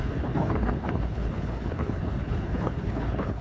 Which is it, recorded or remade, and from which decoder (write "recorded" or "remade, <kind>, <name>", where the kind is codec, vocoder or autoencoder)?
remade, codec, HILCodec